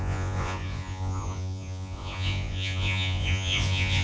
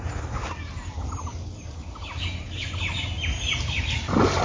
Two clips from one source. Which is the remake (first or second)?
first